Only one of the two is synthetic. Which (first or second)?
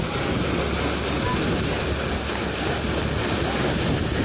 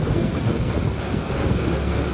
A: second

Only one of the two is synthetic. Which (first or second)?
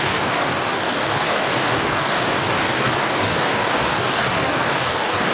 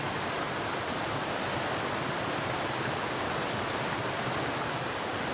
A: first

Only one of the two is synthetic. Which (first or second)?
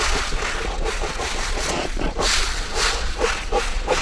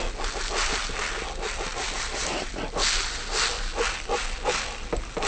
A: first